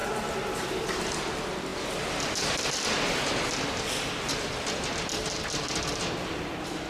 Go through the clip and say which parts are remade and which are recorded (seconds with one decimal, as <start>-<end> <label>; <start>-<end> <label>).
0.0-6.9 recorded